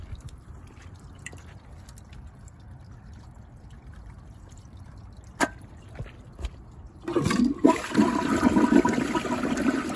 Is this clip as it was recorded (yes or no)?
no